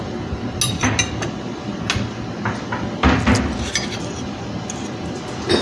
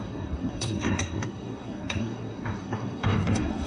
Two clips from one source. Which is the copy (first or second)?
second